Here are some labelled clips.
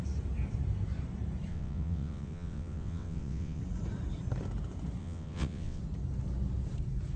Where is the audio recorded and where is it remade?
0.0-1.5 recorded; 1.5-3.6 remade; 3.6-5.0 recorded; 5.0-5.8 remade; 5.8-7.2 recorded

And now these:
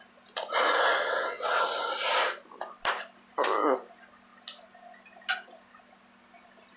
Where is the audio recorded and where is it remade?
0.0-0.9 recorded; 0.9-1.6 remade; 1.6-6.8 recorded

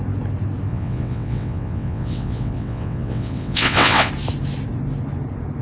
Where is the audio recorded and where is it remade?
0.0-0.7 recorded; 0.7-4.1 remade; 4.1-5.6 recorded